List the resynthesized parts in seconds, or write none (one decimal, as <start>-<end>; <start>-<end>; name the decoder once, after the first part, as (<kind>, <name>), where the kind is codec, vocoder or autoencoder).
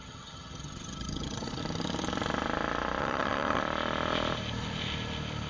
0.0-1.6 (vocoder, HiFi-GAN); 3.0-3.6